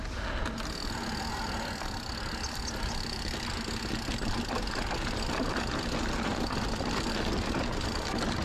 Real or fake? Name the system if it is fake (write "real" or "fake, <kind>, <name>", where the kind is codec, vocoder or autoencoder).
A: real